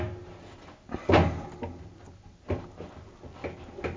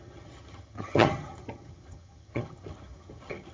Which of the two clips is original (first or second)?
first